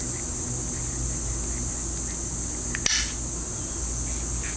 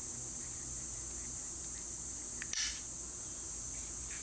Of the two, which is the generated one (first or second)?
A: second